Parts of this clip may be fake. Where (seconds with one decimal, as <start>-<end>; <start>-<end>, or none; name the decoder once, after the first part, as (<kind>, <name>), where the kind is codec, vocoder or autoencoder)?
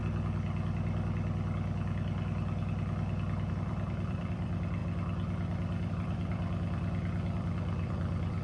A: 3.5-4.8 (vocoder, BigVGAN v2); 5.9-8.4